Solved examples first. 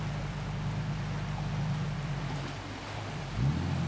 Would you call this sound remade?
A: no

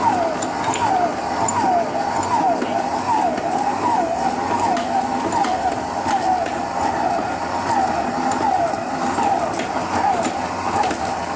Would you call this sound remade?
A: no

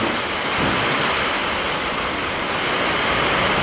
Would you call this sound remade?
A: no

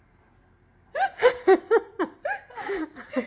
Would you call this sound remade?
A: no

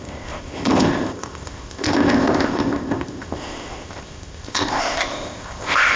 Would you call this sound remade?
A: yes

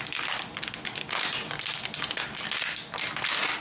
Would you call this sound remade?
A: no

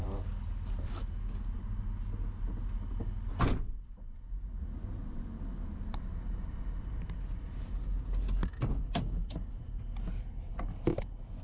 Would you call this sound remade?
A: no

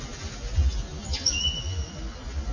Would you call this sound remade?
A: no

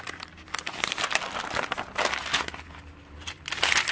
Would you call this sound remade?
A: no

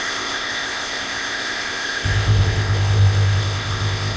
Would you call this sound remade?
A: yes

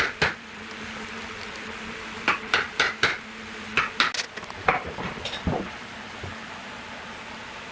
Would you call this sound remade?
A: no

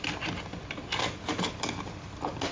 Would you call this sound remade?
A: no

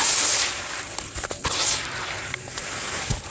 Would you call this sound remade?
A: no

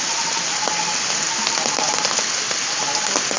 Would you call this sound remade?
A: no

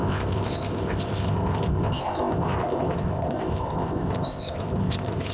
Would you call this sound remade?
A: yes